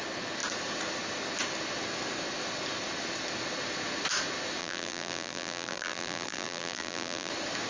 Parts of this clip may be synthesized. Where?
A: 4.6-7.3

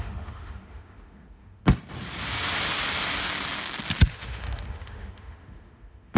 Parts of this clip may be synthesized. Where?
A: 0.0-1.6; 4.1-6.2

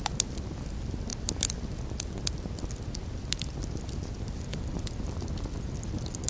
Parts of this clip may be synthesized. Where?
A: none

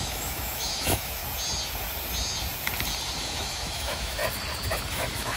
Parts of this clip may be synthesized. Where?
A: 0.0-1.2; 3.2-4.2; 4.9-5.4